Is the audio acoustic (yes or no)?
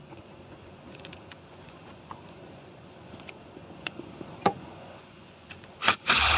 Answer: no